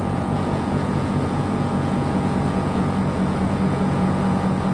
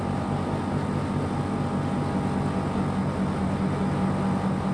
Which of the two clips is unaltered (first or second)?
second